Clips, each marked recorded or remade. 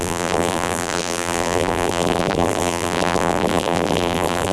remade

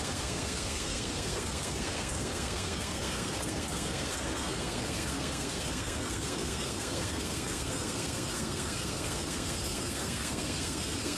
remade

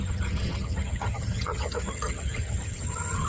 remade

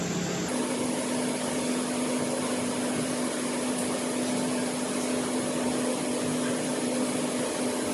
remade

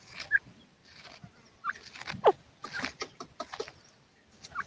recorded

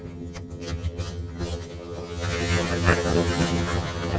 remade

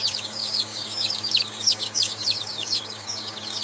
remade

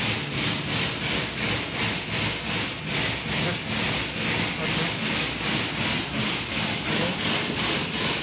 recorded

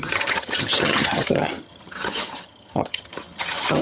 remade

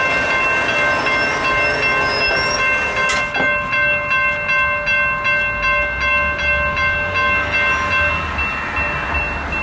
recorded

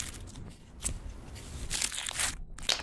recorded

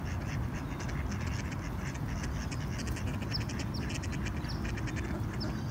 recorded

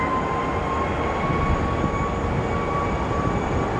recorded